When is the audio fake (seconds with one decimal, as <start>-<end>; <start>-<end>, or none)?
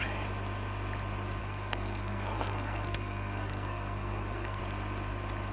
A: 1.4-4.6